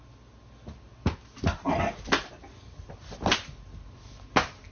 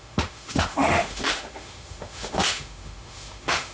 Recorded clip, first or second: first